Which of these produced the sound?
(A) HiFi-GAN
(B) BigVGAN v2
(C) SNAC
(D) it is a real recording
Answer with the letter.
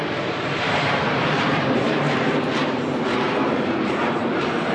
B